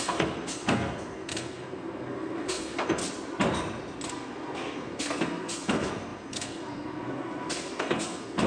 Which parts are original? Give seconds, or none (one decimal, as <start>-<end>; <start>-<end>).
3.0-4.1